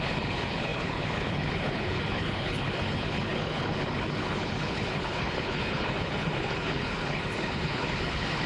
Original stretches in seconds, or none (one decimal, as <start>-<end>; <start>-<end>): none